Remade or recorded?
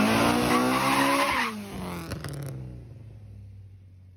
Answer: recorded